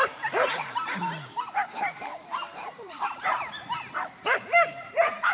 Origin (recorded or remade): remade